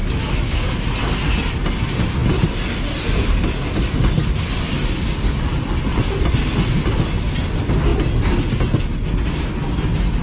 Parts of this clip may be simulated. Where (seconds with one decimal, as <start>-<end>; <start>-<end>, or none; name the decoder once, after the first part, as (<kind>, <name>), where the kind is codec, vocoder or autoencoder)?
none